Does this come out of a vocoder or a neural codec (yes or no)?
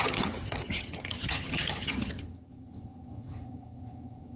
yes